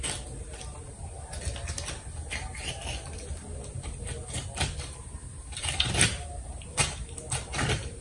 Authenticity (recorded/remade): recorded